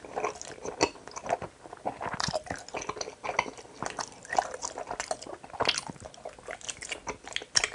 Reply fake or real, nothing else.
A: real